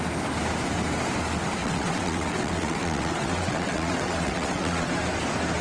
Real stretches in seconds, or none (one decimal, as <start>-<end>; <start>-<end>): 0.0-1.6; 4.9-5.6